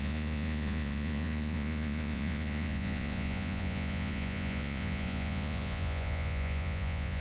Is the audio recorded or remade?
remade